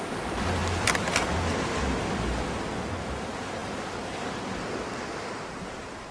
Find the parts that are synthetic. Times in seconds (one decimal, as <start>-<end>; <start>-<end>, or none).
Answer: none